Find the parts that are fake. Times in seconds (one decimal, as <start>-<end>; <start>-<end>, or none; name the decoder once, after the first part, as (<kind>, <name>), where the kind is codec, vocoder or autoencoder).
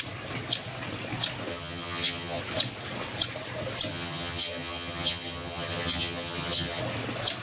1.5-2.4 (vocoder, HiFi-GAN); 3.9-6.8